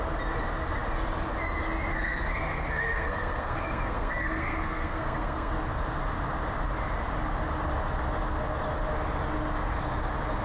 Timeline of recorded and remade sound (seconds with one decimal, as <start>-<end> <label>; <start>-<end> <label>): 0.0-1.9 recorded; 1.9-5.5 remade; 5.5-10.4 recorded